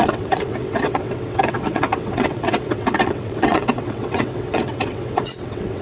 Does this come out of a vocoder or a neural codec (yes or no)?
yes